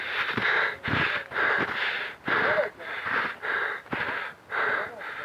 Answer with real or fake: real